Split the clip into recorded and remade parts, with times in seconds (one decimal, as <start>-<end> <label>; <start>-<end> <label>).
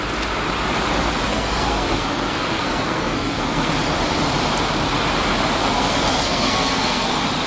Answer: 0.0-1.3 recorded; 1.3-3.7 remade; 3.7-5.6 recorded; 5.6-7.1 remade; 7.1-7.5 recorded